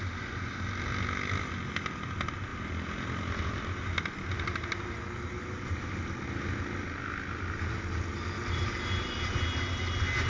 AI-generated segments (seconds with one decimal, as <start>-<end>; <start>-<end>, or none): none